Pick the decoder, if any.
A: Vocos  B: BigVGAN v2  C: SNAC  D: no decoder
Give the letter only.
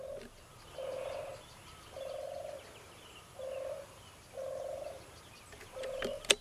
D